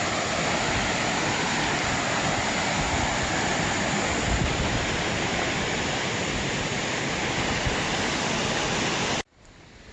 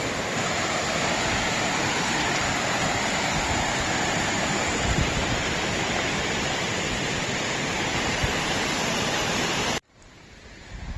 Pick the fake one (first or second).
second